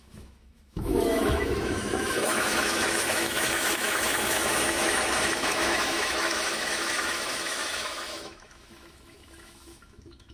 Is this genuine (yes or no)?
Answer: no